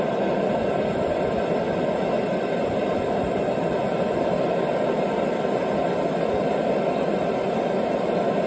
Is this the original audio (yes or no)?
yes